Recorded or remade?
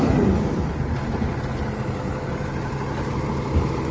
recorded